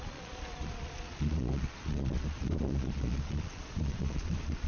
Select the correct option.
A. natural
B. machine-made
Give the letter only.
B